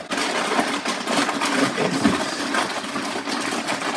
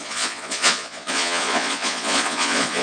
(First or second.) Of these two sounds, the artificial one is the second